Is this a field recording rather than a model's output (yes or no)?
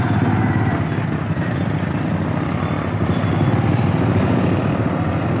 yes